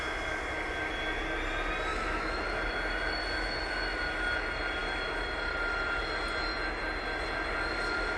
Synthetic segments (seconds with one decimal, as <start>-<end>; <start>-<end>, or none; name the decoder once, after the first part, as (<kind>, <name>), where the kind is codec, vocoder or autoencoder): 1.9-2.4 (autoencoder, DAC-VAE)